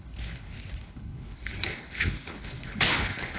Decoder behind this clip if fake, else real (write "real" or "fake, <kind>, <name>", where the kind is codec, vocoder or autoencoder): fake, codec, HILCodec